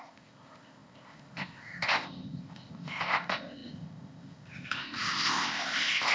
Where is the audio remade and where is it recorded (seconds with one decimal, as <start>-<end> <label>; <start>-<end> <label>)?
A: 0.0-6.1 remade